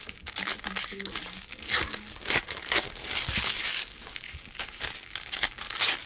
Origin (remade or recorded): remade